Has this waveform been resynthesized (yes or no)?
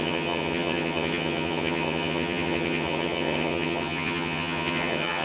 yes